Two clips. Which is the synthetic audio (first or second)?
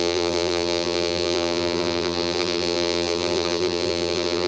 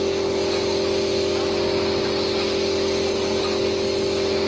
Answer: first